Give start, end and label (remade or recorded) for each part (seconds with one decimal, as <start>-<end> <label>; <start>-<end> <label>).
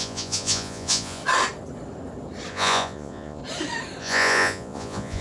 0.0-1.2 remade; 1.2-2.5 recorded; 2.5-3.4 remade; 3.4-4.0 recorded; 4.0-5.2 remade